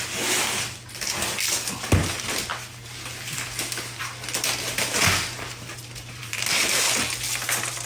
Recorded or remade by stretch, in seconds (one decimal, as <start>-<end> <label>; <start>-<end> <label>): 0.0-6.2 recorded; 6.2-6.8 remade; 6.8-7.9 recorded